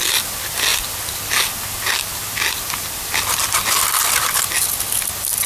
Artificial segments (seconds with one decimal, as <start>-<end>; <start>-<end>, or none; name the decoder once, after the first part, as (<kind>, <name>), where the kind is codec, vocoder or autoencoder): none

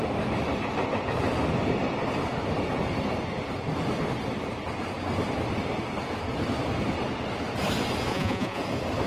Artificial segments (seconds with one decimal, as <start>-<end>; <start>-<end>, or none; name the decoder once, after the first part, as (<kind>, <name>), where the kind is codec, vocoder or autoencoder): 8.1-8.6 (vocoder, Vocos)

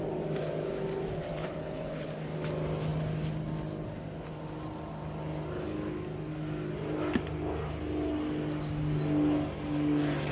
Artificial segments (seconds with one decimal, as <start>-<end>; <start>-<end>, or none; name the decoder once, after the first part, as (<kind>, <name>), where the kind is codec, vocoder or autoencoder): 1.4-2.1 (codec, HILCodec)

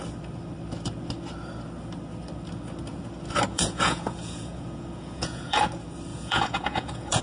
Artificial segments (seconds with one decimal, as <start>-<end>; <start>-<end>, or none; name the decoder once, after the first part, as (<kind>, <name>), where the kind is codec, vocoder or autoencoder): 3.5-5.6 (vocoder, Vocos); 6.1-7.2

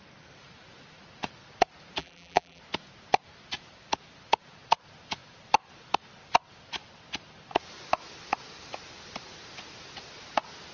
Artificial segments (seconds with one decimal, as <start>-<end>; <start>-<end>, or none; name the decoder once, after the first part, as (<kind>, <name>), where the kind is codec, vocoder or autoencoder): 2.0-2.6 (vocoder, BigVGAN v2)

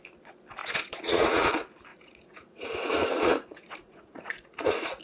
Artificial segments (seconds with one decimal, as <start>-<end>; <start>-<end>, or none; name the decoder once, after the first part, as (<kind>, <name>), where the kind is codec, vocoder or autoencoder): 0.6-1.5 (vocoder, Vocos); 1.9-5.0

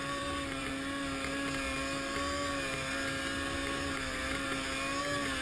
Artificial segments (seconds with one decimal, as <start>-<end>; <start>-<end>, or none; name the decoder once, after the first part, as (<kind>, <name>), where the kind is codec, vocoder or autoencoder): 0.0-0.7 (vocoder, BigVGAN v2)